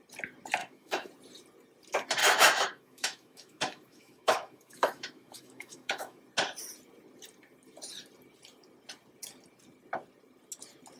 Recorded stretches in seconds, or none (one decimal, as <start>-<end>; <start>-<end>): 0.0-0.6; 1.1-2.2; 6.2-11.0